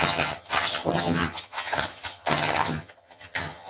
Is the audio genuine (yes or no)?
no